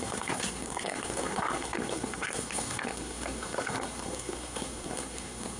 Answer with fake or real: fake